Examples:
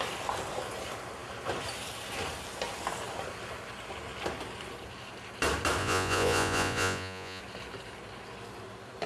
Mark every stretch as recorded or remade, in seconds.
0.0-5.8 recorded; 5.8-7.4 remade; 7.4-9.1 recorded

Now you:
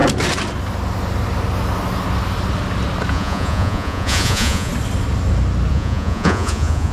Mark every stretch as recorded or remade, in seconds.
0.0-3.1 recorded; 3.1-4.7 remade; 4.7-5.7 recorded; 5.7-6.9 remade

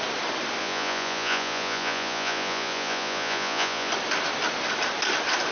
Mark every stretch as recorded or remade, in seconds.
0.0-0.6 recorded; 0.6-3.9 remade; 3.9-5.5 recorded

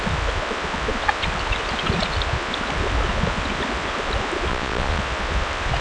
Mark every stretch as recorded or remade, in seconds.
0.0-4.5 recorded; 4.5-5.0 remade; 5.0-5.8 recorded

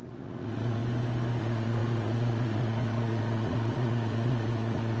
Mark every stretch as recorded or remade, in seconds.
0.0-0.8 remade; 0.8-1.4 recorded; 1.4-5.0 remade